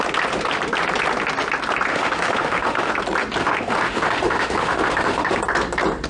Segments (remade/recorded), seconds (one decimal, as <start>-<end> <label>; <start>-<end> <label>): 0.0-1.9 recorded; 1.9-2.9 remade; 2.9-3.4 recorded; 3.4-5.4 remade; 5.4-6.1 recorded